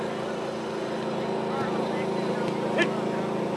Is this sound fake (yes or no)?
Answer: no